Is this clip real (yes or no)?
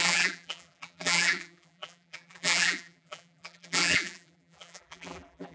no